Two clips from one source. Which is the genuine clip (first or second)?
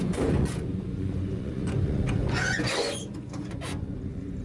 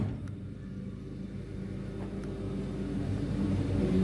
second